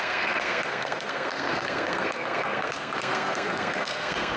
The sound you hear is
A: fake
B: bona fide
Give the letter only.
A